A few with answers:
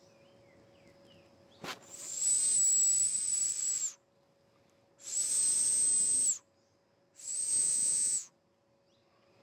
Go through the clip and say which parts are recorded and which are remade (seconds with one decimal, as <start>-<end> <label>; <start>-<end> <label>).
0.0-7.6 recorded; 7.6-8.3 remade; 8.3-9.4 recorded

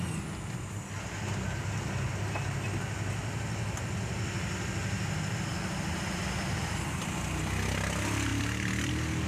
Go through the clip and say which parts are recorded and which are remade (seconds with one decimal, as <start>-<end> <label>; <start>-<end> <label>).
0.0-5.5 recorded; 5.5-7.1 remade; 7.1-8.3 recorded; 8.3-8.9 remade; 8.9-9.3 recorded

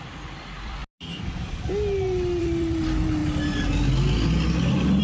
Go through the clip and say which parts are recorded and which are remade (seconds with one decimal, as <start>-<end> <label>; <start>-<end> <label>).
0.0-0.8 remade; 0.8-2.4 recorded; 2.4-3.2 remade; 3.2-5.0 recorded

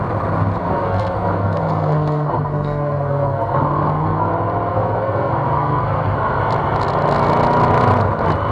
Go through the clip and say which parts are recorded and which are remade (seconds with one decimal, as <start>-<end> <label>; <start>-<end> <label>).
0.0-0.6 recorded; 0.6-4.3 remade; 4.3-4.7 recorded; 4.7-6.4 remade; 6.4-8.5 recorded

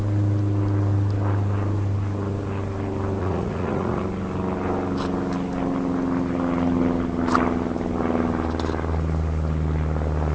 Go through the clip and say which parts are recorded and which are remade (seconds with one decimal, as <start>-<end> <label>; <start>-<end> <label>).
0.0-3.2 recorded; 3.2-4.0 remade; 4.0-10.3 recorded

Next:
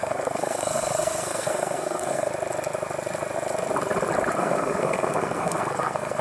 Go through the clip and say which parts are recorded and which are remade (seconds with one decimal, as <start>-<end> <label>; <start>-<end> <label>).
0.0-2.3 remade; 2.3-4.4 recorded; 4.4-6.2 remade

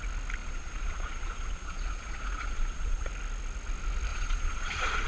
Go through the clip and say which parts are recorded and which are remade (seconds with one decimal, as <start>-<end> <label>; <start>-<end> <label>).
0.0-0.4 recorded; 0.4-3.1 remade; 3.1-4.1 recorded; 4.1-5.1 remade